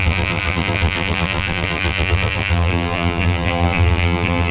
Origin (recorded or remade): remade